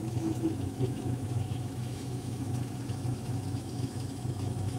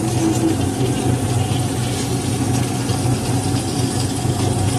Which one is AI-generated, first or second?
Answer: first